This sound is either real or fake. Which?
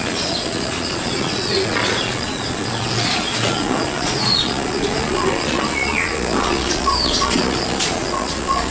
fake